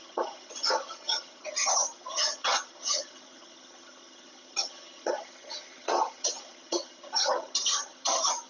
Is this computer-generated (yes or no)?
yes